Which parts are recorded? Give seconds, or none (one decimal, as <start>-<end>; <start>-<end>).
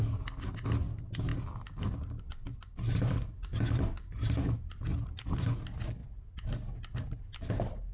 0.0-7.9